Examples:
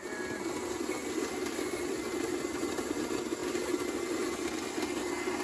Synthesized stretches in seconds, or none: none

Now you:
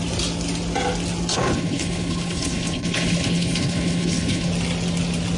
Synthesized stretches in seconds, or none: 1.3-4.5 (codec, HILCodec)

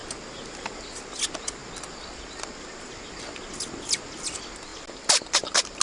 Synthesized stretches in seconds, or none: none

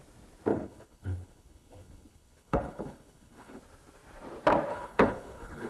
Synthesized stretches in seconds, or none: 0.5-3.6 (codec, HILCodec); 4.7-5.7